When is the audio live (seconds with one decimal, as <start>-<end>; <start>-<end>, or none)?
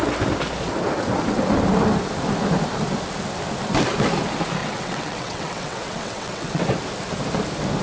0.0-4.6; 6.6-7.8